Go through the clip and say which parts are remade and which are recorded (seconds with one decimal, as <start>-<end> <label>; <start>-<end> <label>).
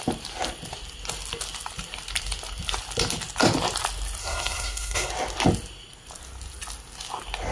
0.0-4.2 recorded; 4.2-5.1 remade; 5.1-7.5 recorded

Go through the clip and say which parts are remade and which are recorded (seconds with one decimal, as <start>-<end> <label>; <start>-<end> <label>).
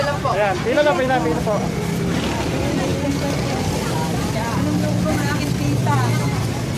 0.0-6.8 recorded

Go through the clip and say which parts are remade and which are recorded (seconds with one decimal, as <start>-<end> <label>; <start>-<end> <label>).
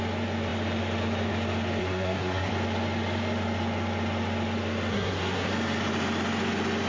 0.0-1.8 recorded; 1.8-2.5 remade; 2.5-4.9 recorded; 4.9-5.5 remade; 5.5-6.9 recorded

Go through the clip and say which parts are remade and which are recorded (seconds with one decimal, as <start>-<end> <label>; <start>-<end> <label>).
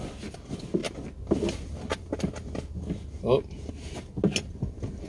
0.0-5.1 recorded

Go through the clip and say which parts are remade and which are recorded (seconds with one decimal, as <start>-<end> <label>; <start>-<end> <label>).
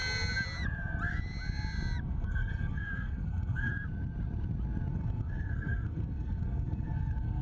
0.0-2.0 recorded; 2.0-3.7 remade; 3.7-4.9 recorded; 4.9-7.4 remade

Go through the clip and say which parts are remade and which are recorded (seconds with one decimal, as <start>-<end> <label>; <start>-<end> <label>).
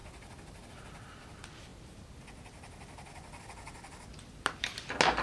0.0-5.2 recorded